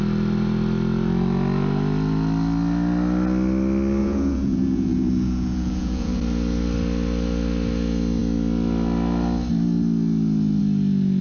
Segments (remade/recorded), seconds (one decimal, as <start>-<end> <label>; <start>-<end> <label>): 0.0-4.0 recorded; 4.0-6.2 remade; 6.2-11.2 recorded